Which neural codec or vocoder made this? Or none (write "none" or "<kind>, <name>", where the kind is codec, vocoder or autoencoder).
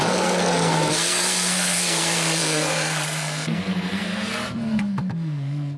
codec, SNAC